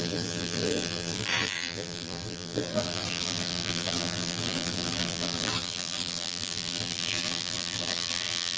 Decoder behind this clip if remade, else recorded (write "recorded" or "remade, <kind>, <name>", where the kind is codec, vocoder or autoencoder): remade, vocoder, BigVGAN v2